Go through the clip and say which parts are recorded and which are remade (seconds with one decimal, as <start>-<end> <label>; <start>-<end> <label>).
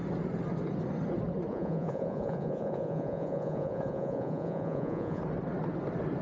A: 0.0-1.5 recorded; 1.5-5.2 remade; 5.2-6.2 recorded